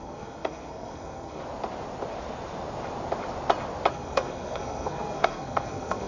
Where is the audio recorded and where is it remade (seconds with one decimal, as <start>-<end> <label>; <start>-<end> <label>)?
0.0-1.4 remade; 1.4-3.9 recorded; 3.9-6.1 remade